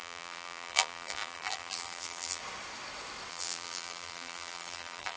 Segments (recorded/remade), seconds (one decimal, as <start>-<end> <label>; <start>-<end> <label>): 0.0-2.4 remade; 2.4-3.3 recorded; 3.3-5.2 remade